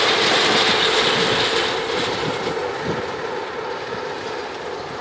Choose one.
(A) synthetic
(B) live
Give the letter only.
B